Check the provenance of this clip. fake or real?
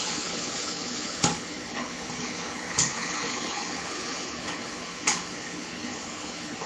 fake